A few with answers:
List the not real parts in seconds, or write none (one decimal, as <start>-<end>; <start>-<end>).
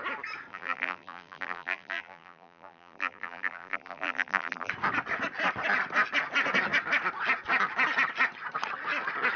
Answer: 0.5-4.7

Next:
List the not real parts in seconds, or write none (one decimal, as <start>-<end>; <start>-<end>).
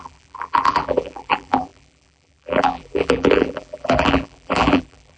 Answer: 0.0-5.2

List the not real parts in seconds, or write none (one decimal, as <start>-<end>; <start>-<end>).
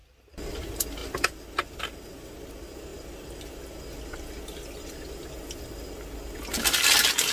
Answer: 0.0-0.6; 2.9-3.5